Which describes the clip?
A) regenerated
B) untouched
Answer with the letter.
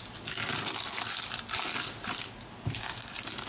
B